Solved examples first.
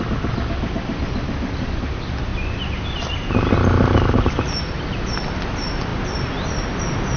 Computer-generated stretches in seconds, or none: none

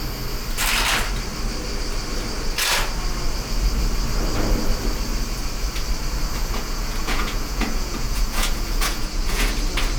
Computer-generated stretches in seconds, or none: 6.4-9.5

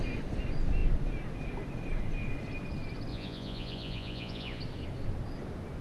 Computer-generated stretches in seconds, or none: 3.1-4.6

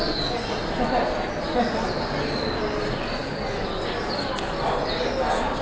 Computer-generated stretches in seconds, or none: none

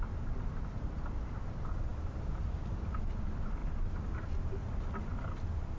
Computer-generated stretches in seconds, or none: none

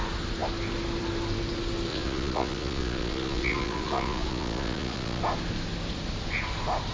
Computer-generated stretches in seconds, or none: 1.9-5.2

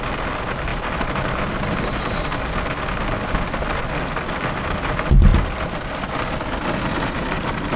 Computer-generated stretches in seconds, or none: none